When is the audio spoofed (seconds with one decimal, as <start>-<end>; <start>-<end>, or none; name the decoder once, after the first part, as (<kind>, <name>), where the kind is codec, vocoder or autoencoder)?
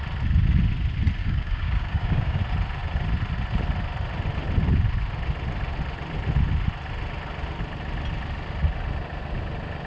1.2-2.4 (codec, DAC)